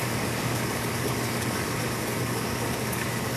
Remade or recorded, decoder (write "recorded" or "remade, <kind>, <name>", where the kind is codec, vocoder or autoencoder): remade, codec, DAC